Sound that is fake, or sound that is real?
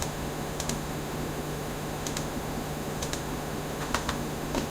fake